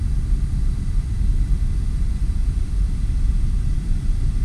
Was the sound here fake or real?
real